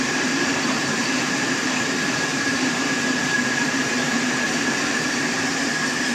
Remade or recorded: remade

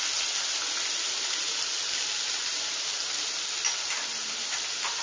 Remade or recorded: recorded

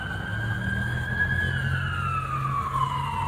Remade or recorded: recorded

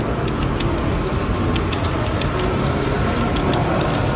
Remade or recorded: recorded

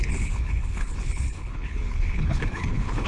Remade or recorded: remade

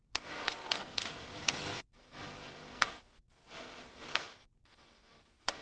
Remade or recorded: remade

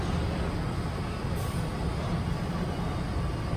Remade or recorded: recorded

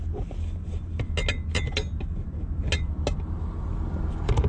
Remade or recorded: recorded